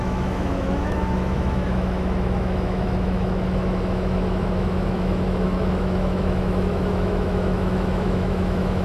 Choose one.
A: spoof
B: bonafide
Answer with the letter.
A